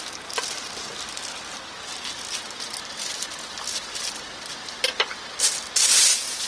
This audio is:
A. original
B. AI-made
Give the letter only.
A